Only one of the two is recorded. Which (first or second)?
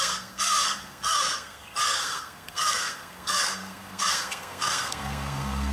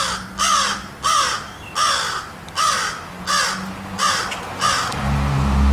second